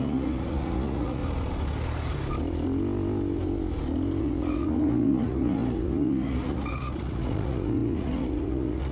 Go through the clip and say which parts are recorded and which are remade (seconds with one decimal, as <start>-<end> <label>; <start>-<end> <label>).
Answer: 0.0-1.2 remade; 1.2-4.2 recorded; 4.2-8.9 remade